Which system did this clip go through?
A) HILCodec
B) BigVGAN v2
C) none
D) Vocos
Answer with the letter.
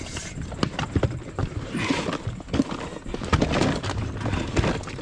C